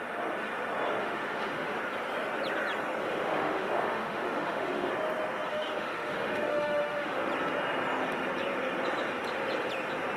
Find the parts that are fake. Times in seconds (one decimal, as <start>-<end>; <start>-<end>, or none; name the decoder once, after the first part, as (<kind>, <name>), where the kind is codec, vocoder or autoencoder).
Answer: 1.0-1.8 (autoencoder, DAC-VAE); 3.0-4.9; 5.5-7.3